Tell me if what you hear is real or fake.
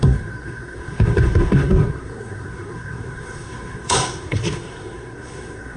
fake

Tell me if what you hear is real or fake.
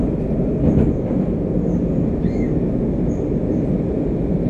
real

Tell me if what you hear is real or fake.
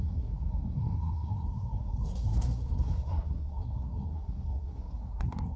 fake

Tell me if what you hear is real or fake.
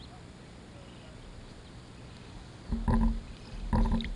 real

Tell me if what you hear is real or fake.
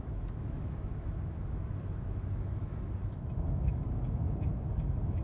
fake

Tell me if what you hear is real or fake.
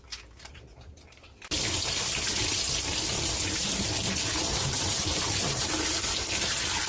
real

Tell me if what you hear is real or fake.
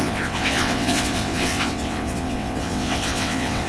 fake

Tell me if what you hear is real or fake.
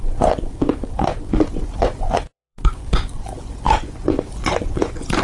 fake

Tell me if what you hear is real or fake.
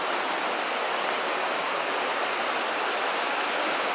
real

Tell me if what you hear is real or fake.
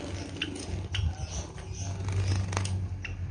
real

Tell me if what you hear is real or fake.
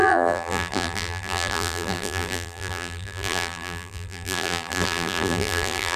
fake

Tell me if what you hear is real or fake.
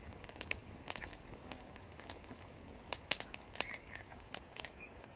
fake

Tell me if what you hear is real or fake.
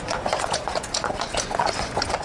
fake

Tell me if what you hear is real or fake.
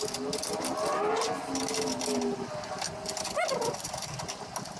real